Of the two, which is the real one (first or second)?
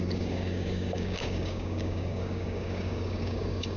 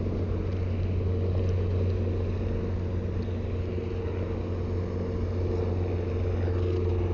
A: second